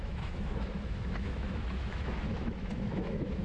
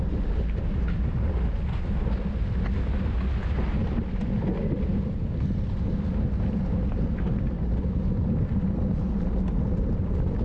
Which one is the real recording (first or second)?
second